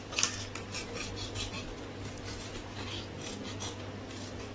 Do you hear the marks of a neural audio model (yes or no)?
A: no